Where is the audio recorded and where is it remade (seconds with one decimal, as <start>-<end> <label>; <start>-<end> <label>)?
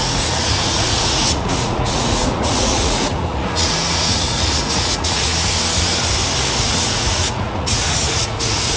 0.0-5.3 remade; 5.3-6.6 recorded; 6.6-8.8 remade